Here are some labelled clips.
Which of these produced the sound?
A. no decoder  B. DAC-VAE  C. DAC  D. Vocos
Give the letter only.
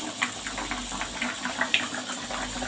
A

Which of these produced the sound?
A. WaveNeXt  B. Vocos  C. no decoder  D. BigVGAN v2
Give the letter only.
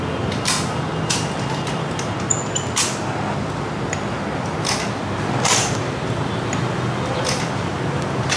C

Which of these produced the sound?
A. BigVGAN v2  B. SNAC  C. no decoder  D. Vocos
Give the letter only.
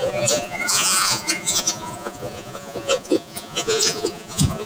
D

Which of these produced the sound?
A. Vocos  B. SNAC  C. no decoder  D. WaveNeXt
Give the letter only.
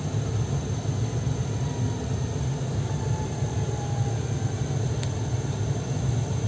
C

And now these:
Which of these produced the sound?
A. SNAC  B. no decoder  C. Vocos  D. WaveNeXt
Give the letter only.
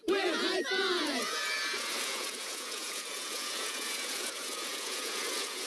C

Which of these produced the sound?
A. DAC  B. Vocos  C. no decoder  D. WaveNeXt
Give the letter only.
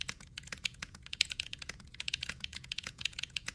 B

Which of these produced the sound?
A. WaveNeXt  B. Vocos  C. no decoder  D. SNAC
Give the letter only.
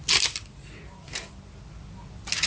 C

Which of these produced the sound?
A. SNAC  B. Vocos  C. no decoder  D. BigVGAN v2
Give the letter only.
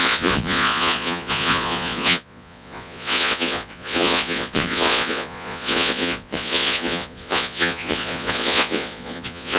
B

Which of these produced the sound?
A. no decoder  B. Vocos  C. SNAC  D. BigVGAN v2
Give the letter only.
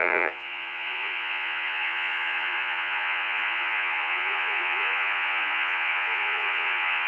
B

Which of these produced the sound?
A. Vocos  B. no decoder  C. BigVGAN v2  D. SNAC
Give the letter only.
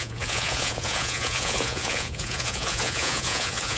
A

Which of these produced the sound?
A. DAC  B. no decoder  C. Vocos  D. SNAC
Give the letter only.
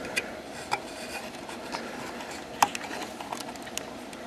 B